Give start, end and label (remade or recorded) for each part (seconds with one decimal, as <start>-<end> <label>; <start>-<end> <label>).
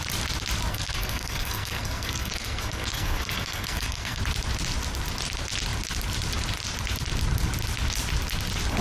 0.0-0.7 recorded; 0.7-4.2 remade; 4.2-8.8 recorded